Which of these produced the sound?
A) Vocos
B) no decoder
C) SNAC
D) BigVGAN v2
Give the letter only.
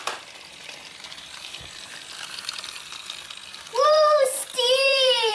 D